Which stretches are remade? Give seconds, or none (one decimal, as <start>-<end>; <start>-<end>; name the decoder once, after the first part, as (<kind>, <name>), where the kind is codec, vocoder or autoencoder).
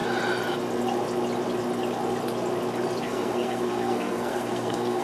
3.0-5.0 (codec, SNAC)